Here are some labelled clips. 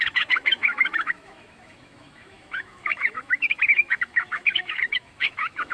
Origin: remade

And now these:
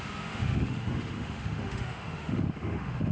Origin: remade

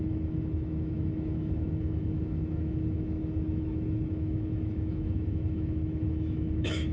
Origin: remade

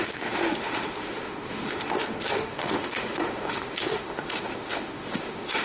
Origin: remade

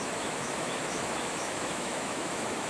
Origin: remade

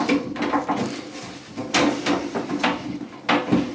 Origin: recorded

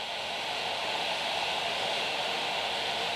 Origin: remade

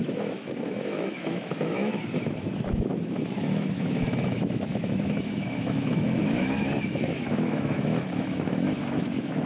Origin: remade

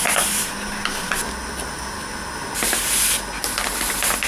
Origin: recorded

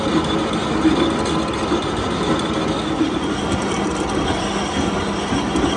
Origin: recorded